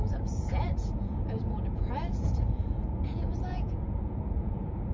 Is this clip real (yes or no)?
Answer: no